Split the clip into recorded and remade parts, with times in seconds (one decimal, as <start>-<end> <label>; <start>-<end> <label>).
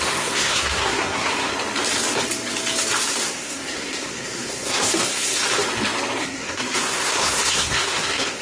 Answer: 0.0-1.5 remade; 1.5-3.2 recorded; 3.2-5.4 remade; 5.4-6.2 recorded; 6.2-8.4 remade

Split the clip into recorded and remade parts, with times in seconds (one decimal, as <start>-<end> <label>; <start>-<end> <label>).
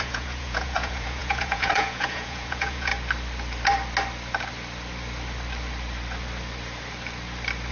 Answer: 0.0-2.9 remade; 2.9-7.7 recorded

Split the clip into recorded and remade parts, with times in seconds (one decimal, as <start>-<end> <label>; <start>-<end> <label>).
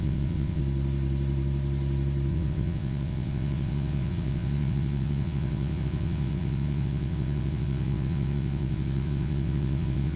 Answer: 0.0-0.6 remade; 0.6-2.3 recorded; 2.3-10.2 remade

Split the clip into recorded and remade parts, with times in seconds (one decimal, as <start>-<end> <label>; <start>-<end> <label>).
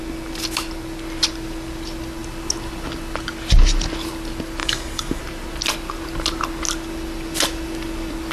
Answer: 0.0-4.6 recorded; 4.6-5.2 remade; 5.2-8.3 recorded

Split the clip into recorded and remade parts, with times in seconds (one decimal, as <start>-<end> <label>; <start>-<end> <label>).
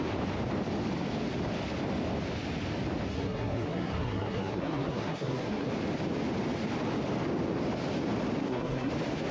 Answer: 0.0-3.1 recorded; 3.1-5.7 remade; 5.7-8.4 recorded; 8.4-8.9 remade; 8.9-9.3 recorded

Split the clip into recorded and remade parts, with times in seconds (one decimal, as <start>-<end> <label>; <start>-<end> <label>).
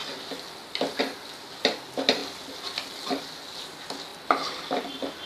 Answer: 0.0-4.1 recorded; 4.1-4.7 remade; 4.7-5.3 recorded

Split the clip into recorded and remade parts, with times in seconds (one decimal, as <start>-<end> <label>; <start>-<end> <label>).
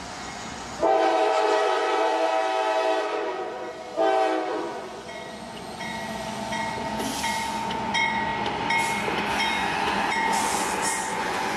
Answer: 0.0-2.3 remade; 2.3-3.0 recorded; 3.0-3.7 remade; 3.7-4.5 recorded; 4.5-8.3 remade; 8.3-9.3 recorded; 9.3-11.6 remade